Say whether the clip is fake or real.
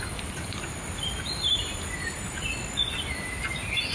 real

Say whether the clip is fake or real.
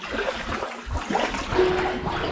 real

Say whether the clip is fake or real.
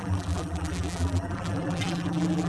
fake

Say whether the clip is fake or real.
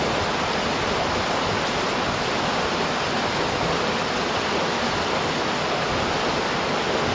real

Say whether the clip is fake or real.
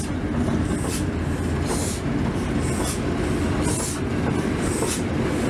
real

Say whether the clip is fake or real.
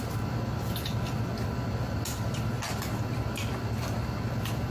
real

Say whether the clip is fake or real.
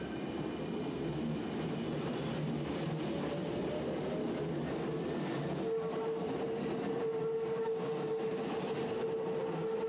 real